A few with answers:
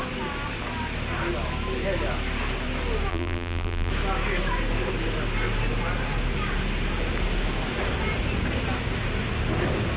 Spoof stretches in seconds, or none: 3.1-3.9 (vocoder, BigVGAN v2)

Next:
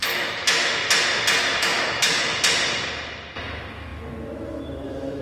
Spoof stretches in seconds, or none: 0.0-0.8 (autoencoder, DAC-VAE); 1.6-2.3; 3.4-5.2

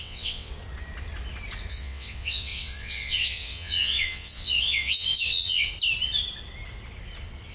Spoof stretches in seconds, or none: 0.0-0.5 (vocoder, WaveNeXt); 1.7-5.7

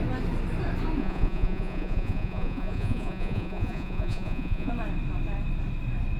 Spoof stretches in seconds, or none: 1.0-4.7 (vocoder, Vocos)

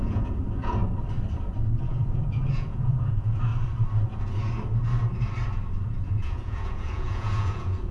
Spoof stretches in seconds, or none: 0.0-0.8 (vocoder, Vocos); 1.9-3.5; 6.0-7.9

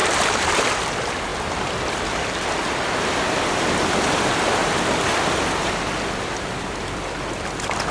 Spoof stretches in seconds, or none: 0.0-0.6 (vocoder, BigVGAN v2); 1.3-3.4; 4.6-5.8